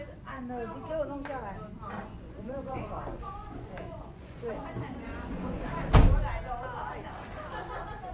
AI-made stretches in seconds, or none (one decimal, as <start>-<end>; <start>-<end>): 2.0-5.7